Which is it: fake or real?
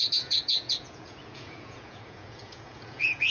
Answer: fake